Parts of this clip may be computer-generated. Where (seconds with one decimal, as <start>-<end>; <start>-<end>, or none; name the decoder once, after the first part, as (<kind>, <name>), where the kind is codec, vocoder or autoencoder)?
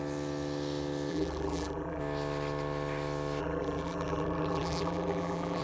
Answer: 1.1-2.0 (vocoder, BigVGAN v2); 3.4-5.6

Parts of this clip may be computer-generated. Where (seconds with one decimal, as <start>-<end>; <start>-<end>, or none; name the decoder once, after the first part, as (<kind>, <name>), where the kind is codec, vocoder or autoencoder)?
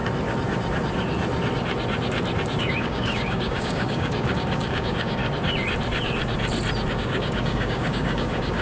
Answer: 2.6-5.2 (codec, DAC); 6.9-8.6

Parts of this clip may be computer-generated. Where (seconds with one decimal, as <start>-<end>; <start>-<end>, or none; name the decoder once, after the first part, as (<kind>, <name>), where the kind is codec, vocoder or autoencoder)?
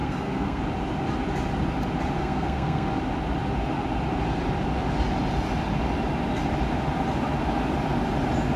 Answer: 0.0-0.6 (codec, SNAC); 2.2-3.0